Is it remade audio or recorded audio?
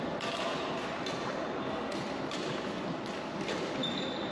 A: recorded